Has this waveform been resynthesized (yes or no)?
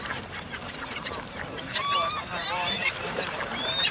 yes